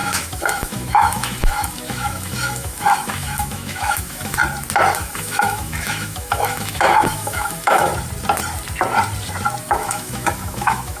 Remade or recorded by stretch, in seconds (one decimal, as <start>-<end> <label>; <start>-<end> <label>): 0.0-4.4 remade; 4.4-5.0 recorded; 5.0-7.9 remade; 7.9-9.6 recorded; 9.6-11.0 remade